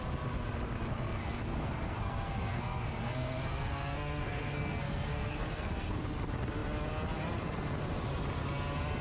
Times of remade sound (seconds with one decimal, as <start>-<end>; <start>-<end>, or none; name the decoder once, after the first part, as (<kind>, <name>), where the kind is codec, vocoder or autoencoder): 0.9-6.0 (codec, SNAC)